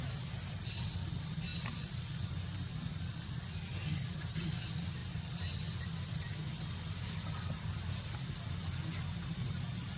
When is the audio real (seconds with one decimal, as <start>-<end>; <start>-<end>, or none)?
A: 0.0-10.0